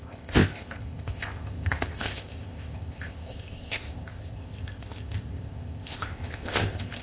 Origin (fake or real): fake